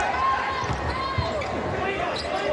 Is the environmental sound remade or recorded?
recorded